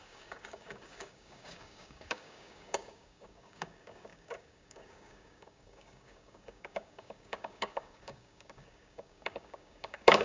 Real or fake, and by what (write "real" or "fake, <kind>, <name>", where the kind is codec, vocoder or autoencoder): fake, codec, DAC